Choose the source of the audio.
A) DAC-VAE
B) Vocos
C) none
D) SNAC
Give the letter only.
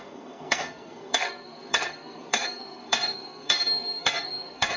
D